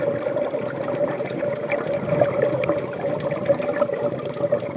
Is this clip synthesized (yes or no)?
no